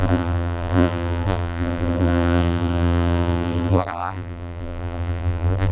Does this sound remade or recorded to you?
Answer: remade